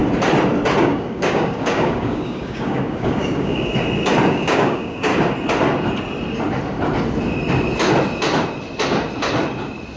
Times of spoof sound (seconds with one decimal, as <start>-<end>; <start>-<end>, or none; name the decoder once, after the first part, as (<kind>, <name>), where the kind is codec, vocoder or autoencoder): 0.8-3.7 (codec, DAC); 4.3-5.1

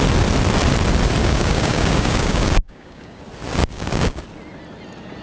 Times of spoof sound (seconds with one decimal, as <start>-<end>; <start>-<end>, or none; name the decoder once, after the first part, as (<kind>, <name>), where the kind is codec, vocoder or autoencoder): 1.2-3.2 (codec, DAC); 3.6-4.2

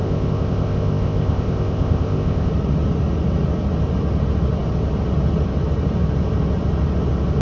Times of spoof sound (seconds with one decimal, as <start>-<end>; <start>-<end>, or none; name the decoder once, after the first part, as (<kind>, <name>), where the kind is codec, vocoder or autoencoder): 0.0-2.5 (codec, ZipCodec)